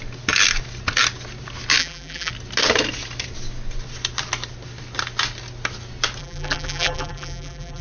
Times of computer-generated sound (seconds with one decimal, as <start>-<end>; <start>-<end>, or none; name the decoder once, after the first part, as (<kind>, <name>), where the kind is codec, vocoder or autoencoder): 1.8-2.3 (vocoder, BigVGAN v2); 6.2-7.8